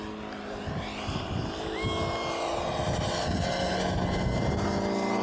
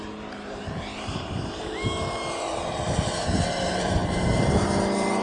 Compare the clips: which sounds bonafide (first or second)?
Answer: first